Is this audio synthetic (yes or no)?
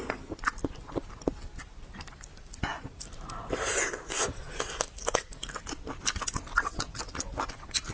no